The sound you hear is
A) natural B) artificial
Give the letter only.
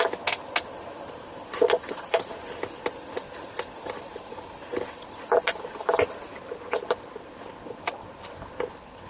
A